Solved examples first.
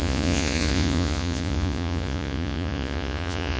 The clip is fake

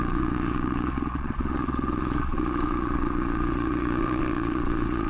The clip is fake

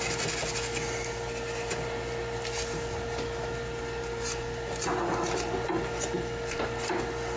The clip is real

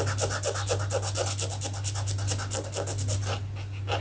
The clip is real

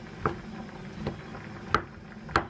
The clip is real